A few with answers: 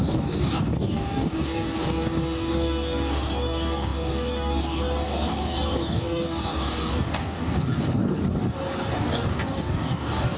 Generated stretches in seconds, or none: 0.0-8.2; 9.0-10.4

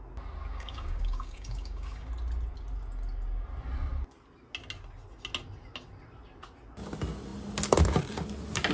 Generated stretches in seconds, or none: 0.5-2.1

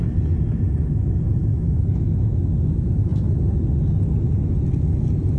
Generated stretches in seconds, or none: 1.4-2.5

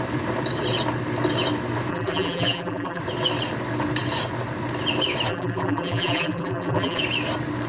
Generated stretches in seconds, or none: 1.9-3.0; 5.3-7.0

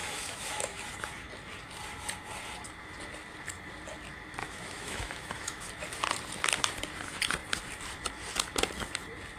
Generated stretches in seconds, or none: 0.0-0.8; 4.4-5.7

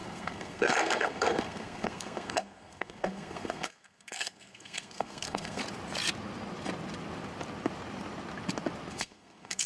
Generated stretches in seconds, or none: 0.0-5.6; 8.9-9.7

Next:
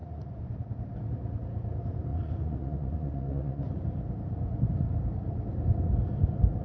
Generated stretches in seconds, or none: 0.0-0.5; 2.1-3.8